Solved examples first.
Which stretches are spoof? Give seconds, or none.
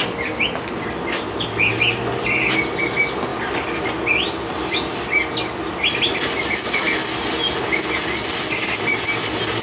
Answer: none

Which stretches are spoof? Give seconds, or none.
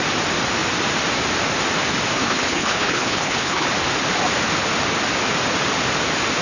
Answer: 2.2-3.7 (codec, HILCodec)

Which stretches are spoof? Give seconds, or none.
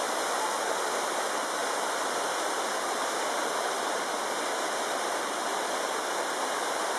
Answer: none